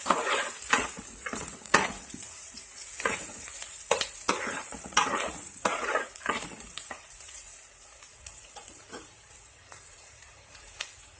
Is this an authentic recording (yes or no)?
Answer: no